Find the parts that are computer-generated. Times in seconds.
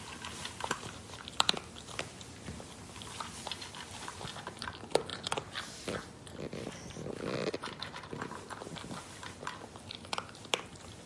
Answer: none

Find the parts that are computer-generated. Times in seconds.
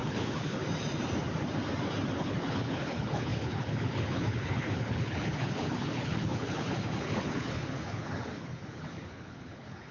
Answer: 0.0-0.6 (codec, HILCodec); 2.1-9.9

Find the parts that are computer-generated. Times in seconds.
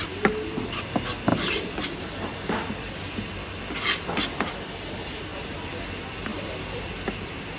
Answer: 1.3-2.0 (vocoder, BigVGAN v2); 6.3-6.9